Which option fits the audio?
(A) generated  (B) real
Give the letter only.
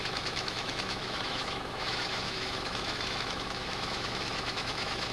A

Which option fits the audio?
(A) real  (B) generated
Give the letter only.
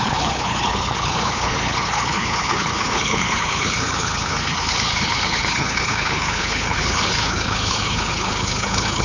B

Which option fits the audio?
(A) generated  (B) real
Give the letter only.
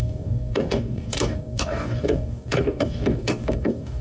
A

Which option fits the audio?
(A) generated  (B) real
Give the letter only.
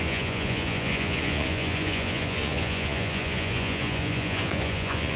A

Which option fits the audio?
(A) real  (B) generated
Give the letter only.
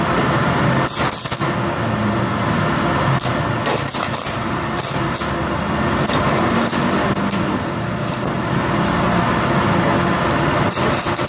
A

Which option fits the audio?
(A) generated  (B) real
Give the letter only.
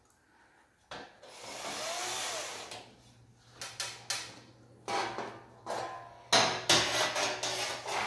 B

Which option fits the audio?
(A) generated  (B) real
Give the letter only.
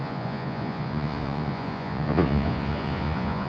A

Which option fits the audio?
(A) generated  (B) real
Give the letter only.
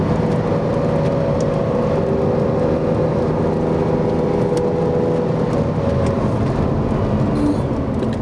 B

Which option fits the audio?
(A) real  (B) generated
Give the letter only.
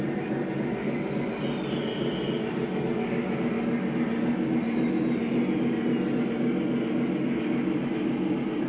A